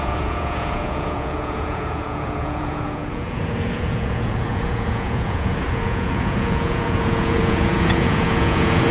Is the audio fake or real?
fake